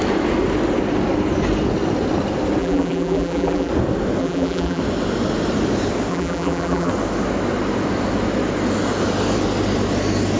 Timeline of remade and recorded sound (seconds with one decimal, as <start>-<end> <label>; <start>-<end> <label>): 0.0-2.6 recorded; 2.6-3.7 remade; 3.7-4.2 recorded; 4.2-4.8 remade; 4.8-6.1 recorded; 6.1-6.9 remade; 6.9-10.4 recorded